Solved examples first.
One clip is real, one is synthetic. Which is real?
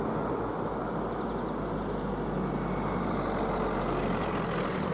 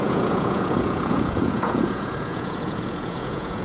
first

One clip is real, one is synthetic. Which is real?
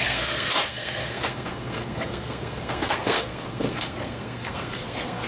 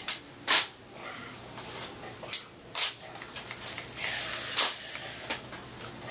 second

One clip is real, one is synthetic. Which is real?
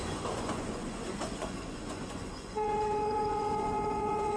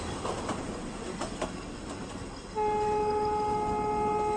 second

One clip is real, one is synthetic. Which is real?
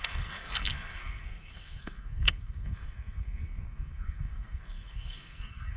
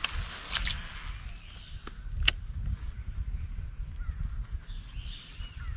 second